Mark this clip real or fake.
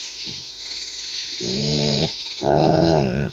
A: fake